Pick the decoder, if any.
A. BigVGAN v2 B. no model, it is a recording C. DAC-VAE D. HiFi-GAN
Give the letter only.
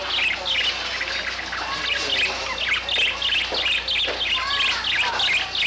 B